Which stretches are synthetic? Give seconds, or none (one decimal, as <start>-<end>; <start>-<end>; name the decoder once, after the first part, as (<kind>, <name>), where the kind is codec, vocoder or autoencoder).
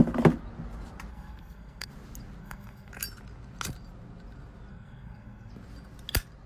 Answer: 1.1-1.9 (codec, SNAC); 2.4-2.9; 4.7-5.5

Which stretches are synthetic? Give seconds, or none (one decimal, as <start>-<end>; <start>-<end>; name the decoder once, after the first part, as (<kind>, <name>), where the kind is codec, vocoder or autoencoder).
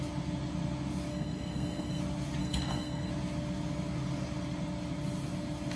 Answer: 1.1-2.0 (codec, SNAC); 2.4-3.1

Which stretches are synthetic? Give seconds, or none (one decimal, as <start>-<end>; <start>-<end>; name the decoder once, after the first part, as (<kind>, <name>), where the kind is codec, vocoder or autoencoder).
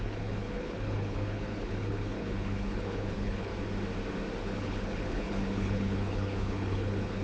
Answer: 0.0-3.5 (codec, HILCodec); 4.4-7.2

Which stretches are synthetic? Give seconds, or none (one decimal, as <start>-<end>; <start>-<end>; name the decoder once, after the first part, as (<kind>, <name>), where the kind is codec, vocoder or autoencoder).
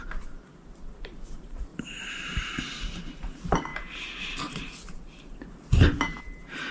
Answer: 0.0-3.7 (vocoder, BigVGAN v2); 6.2-6.7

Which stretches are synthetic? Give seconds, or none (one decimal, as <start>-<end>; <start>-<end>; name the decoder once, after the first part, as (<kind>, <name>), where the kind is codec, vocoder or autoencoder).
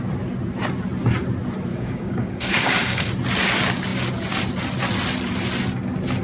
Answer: 1.7-3.1 (codec, DAC)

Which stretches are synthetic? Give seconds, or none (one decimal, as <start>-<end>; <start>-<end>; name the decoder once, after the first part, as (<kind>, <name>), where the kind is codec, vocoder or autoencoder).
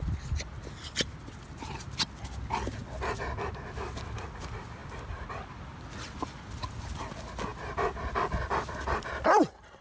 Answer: none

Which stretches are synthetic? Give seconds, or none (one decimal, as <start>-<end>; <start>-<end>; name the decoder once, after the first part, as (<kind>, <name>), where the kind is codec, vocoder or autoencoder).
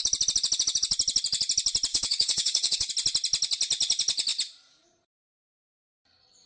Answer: 1.9-2.9 (codec, DAC)